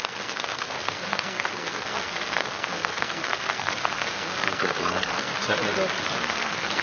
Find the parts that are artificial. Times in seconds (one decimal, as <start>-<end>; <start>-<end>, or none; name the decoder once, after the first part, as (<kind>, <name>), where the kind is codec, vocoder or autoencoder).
0.0-5.3 (codec, SNAC); 6.0-6.8